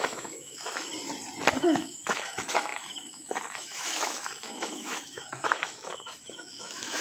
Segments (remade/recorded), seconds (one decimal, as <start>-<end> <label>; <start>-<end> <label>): 0.0-0.9 remade; 0.9-1.6 recorded; 1.6-7.0 remade